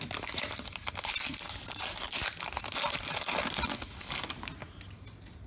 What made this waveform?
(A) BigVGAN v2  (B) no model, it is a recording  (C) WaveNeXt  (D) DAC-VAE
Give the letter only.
B